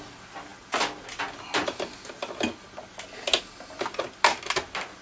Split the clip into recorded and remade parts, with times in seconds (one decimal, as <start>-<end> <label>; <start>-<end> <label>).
0.0-5.0 recorded